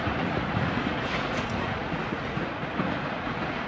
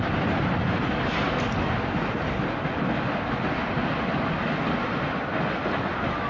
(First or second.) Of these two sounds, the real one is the second